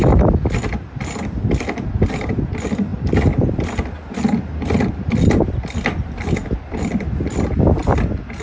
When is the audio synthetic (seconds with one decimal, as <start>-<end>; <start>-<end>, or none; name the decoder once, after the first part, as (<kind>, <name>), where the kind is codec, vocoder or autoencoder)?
none